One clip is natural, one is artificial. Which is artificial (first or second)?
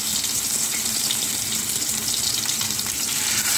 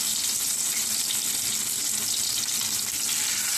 first